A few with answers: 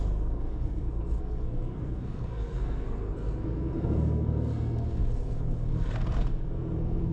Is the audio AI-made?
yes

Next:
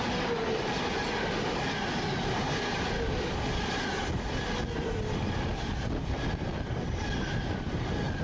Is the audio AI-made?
no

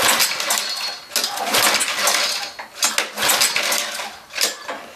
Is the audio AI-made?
no